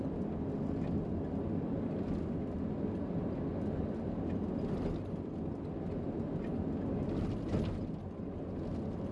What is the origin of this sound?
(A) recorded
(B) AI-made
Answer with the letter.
A